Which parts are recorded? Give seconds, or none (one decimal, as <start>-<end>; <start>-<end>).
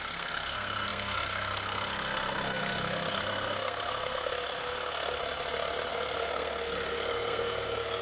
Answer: 5.2-5.9